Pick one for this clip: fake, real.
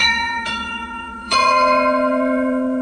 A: fake